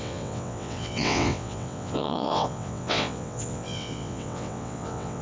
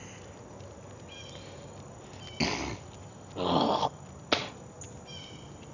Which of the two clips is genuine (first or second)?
second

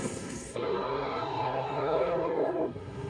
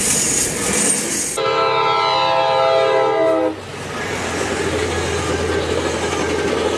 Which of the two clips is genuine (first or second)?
second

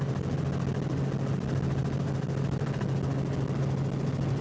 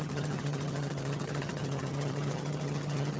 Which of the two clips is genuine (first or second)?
first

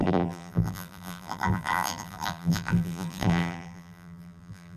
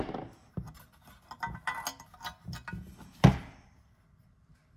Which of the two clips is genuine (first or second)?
second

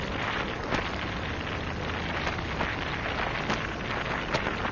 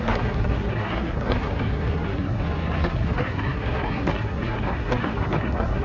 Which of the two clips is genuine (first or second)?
first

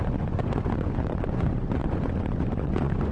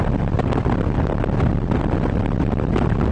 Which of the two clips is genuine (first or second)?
second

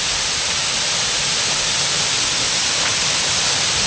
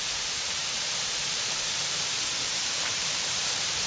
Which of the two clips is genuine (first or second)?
first